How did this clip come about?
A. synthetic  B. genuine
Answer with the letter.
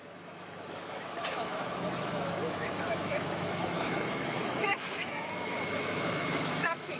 A